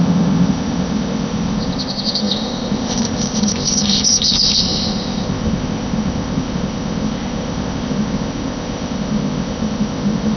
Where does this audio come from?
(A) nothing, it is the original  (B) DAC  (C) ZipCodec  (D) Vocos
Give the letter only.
C